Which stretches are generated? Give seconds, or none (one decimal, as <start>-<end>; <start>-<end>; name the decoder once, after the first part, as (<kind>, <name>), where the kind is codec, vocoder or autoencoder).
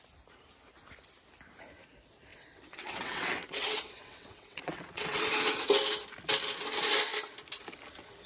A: 2.3-5.3 (vocoder, WaveNeXt)